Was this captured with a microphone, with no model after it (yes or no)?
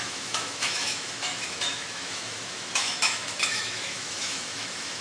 no